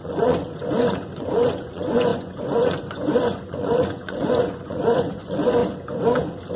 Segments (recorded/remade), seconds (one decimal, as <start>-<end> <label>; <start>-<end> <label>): 0.0-5.6 remade; 5.6-6.6 recorded